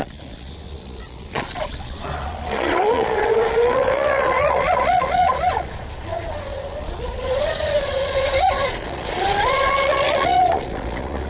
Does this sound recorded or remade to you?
remade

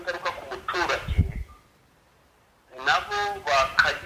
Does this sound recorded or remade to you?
remade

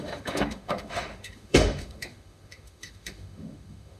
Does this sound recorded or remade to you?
remade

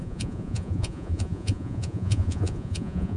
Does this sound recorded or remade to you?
remade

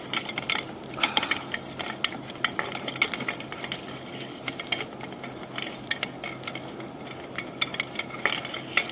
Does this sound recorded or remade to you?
recorded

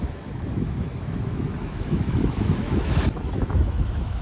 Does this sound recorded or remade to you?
remade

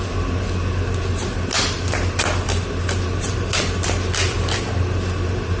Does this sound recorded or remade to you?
recorded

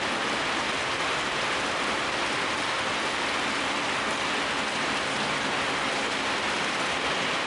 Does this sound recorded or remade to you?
recorded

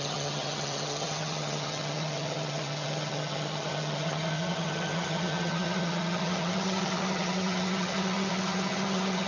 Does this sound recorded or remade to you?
remade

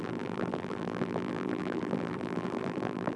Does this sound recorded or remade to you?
remade